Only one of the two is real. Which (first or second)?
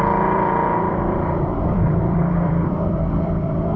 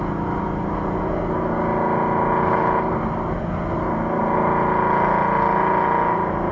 second